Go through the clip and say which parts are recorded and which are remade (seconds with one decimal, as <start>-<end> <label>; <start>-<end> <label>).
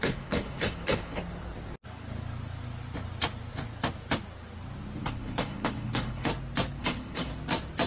0.0-1.2 remade; 1.2-5.0 recorded; 5.0-6.3 remade; 6.3-6.8 recorded; 6.8-7.3 remade; 7.3-7.9 recorded